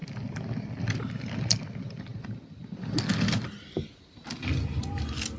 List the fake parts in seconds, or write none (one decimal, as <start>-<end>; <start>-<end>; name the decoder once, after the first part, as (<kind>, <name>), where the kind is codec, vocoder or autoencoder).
none

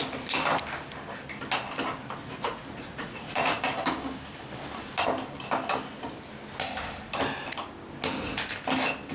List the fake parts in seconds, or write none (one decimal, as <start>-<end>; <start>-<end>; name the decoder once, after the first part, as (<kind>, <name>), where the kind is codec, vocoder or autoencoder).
2.2-3.6 (vocoder, Vocos)

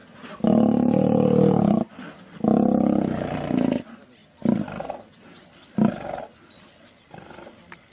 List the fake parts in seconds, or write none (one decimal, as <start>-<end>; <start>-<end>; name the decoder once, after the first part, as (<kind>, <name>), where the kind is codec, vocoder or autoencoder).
none